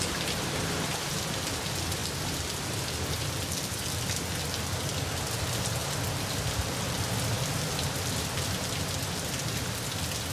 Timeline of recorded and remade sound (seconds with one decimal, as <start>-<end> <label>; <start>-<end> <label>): 0.0-10.3 recorded